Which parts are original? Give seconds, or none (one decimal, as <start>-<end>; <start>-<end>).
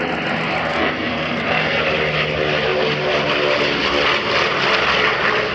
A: 0.0-0.7; 1.8-5.5